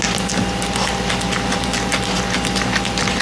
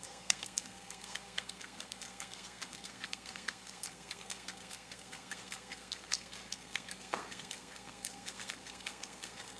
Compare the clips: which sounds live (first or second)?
first